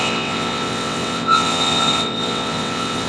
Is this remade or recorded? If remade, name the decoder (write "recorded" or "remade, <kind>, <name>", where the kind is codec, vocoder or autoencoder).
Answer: remade, vocoder, WaveNeXt